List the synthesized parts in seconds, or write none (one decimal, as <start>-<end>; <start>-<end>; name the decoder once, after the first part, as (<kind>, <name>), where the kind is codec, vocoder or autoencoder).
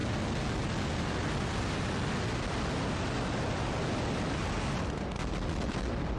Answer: none